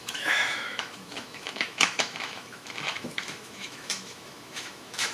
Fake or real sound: fake